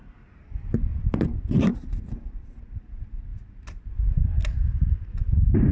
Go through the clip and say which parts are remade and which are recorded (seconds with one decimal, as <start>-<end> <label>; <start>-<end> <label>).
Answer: 0.0-0.9 recorded; 0.9-2.6 remade; 2.6-5.7 recorded